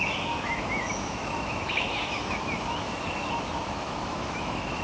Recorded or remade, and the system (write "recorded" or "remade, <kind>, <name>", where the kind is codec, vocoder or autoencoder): remade, autoencoder, DAC-VAE